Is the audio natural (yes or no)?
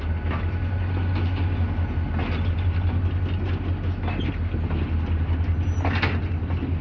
yes